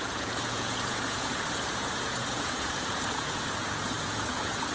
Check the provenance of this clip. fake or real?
fake